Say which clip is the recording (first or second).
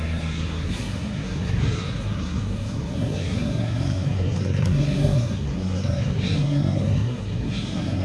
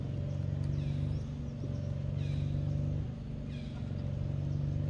second